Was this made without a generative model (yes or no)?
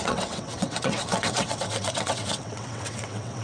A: no